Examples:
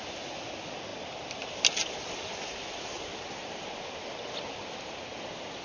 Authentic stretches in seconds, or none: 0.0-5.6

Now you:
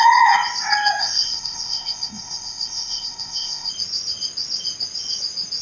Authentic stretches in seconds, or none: 0.0-1.0; 3.7-5.6